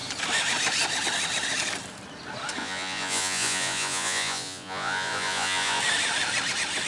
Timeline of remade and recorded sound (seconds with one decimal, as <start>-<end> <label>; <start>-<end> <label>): 0.0-2.6 recorded; 2.6-5.8 remade; 5.8-6.9 recorded